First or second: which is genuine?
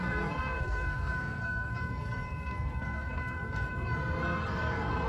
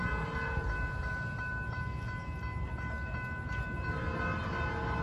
second